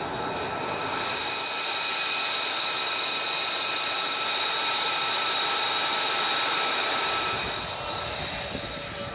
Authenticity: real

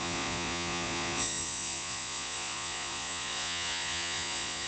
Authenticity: fake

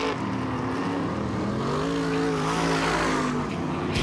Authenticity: real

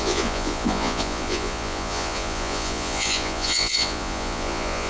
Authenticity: fake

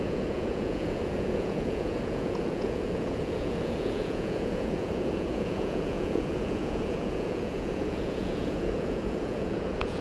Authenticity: fake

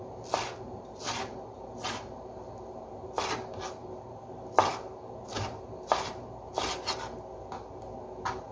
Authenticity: real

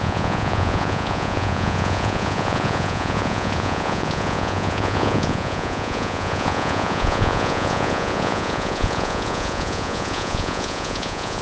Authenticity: fake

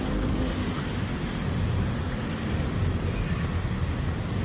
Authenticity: real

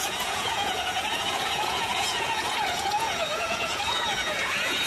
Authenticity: fake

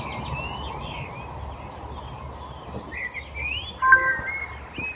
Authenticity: real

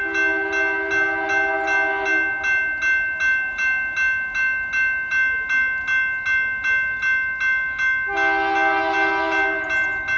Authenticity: real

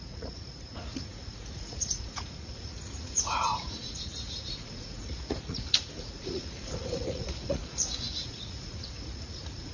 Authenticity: fake